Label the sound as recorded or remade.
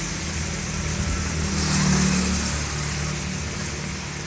recorded